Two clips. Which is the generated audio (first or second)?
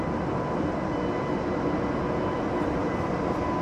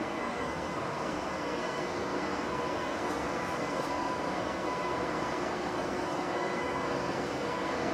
second